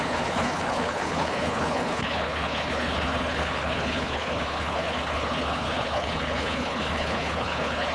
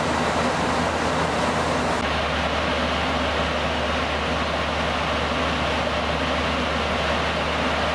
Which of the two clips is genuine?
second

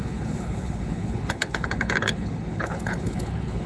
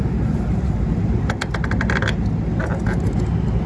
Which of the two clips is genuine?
second